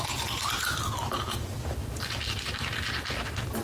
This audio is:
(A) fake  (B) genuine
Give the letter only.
B